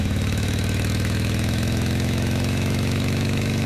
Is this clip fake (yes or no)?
yes